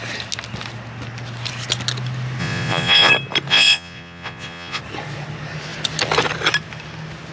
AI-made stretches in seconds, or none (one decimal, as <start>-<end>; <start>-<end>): 2.4-3.1; 3.5-4.8